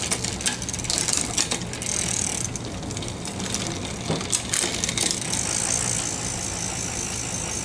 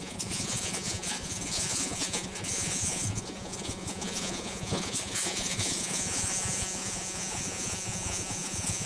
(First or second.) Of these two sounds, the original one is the first